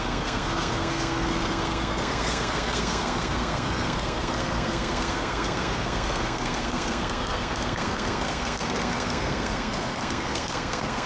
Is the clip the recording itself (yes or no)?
no